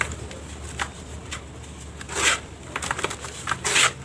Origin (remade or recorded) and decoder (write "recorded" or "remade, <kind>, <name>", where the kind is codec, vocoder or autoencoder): recorded